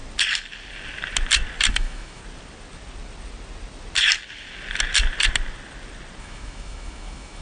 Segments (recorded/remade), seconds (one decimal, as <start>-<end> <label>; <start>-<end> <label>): 0.0-1.7 recorded; 1.7-2.2 remade; 2.2-6.2 recorded; 6.2-7.4 remade